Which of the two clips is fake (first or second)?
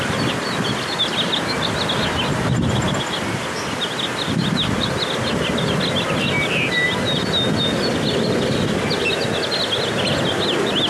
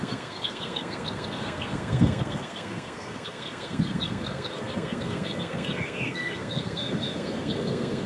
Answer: second